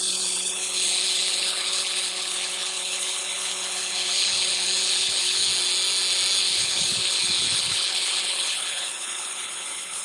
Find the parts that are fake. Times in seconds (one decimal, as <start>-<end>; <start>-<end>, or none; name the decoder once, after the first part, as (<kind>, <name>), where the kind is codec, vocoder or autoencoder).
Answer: 0.0-5.5 (codec, HILCodec); 6.4-10.0